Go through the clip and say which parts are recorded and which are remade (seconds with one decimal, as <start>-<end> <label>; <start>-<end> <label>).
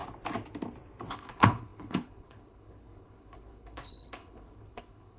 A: 0.0-1.1 recorded; 1.1-5.2 remade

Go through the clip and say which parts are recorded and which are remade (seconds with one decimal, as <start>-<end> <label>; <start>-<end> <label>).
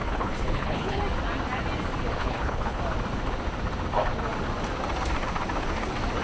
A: 0.0-1.0 remade; 1.0-2.2 recorded; 2.2-2.8 remade; 2.8-6.2 recorded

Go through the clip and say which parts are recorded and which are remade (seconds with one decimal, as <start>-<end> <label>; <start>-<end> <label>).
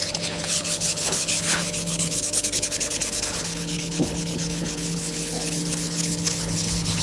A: 0.0-7.0 remade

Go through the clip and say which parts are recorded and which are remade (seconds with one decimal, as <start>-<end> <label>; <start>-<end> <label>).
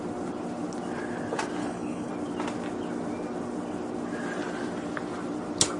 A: 0.0-1.6 recorded; 1.6-2.1 remade; 2.1-5.8 recorded